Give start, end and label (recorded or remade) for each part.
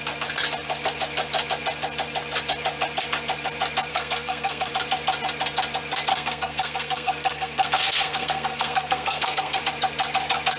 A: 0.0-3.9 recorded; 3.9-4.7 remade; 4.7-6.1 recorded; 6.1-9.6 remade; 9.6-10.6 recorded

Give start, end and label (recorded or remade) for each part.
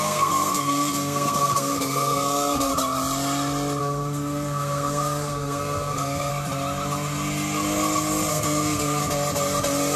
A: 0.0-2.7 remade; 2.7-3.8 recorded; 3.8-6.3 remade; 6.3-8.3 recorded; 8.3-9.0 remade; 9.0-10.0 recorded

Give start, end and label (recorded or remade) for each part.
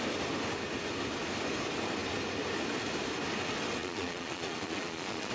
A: 0.0-3.8 recorded; 3.8-5.3 remade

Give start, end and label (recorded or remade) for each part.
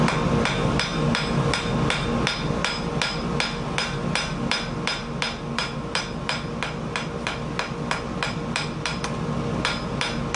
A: 0.0-10.4 recorded